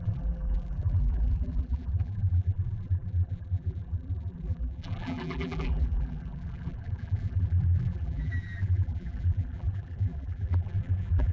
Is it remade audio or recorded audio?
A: remade